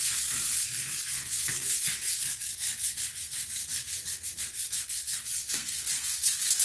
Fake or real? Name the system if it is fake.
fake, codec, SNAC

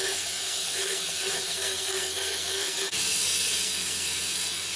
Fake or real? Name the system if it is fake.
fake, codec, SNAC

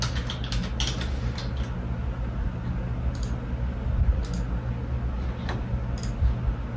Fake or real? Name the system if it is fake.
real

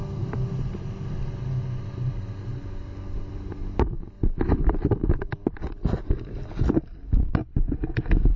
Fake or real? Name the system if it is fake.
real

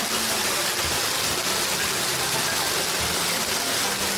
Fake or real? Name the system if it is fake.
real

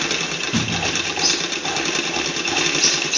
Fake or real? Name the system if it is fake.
real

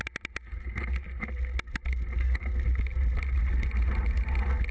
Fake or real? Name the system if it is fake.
real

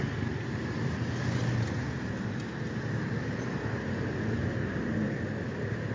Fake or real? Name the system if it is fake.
real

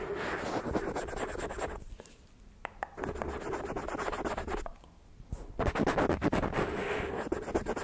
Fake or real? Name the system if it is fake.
real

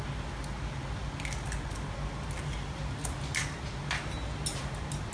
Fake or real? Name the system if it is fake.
real